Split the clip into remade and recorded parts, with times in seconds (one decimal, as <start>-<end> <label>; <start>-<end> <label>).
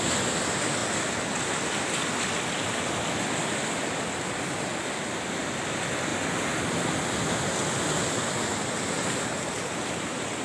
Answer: 0.0-10.4 recorded